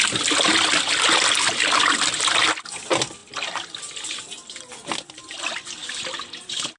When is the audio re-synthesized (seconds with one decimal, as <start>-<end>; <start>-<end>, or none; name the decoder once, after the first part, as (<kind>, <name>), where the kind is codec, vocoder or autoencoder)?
none